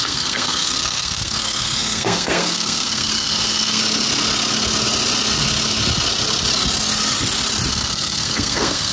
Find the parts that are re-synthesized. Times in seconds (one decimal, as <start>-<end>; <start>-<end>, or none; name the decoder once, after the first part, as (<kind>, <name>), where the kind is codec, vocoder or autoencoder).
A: 0.0-3.8 (codec, SNAC); 7.7-8.9